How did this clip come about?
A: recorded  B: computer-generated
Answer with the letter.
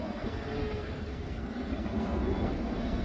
B